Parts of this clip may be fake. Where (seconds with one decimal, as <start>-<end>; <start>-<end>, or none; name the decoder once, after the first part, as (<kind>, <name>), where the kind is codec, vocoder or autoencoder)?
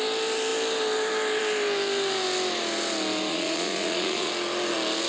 3.3-4.3 (vocoder, Vocos)